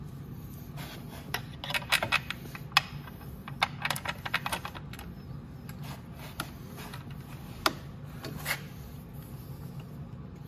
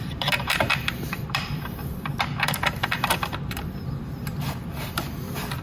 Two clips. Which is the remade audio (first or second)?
second